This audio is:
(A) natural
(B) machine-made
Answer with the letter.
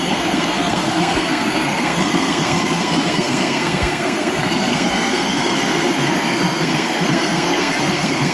B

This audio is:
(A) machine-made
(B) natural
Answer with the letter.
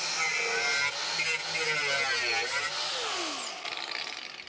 B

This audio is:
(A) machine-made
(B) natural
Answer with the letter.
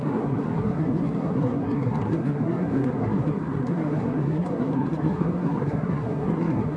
A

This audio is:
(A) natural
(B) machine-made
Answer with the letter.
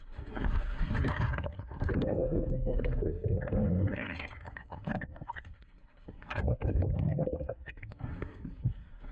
B